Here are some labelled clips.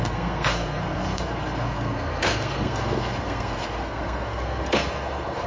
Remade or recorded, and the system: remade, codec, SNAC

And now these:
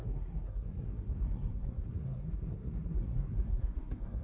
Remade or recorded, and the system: remade, codec, SNAC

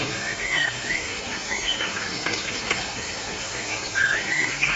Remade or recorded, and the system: remade, codec, SNAC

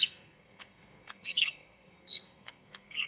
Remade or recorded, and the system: remade, codec, SNAC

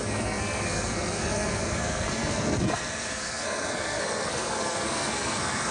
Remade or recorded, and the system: remade, codec, SNAC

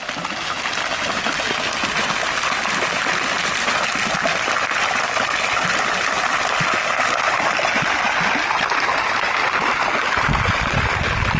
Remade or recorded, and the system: recorded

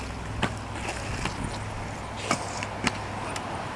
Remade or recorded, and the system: recorded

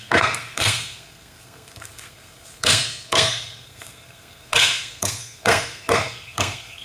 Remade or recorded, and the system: remade, codec, SNAC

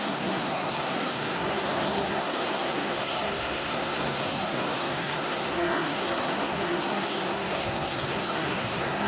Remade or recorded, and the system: remade, codec, SNAC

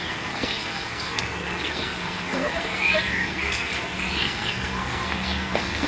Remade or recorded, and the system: remade, codec, SNAC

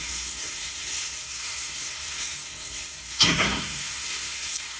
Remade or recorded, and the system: remade, codec, SNAC